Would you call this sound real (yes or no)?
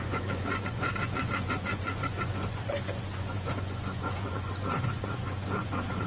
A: no